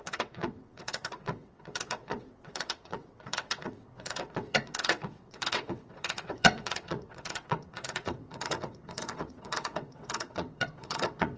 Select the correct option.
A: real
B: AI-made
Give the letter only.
B